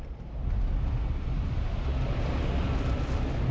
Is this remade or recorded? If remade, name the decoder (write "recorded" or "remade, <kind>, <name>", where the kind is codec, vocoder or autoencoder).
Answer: recorded